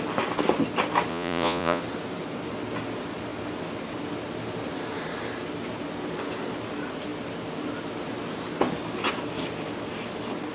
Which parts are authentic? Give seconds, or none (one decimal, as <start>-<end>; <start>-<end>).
0.0-1.1; 1.8-10.5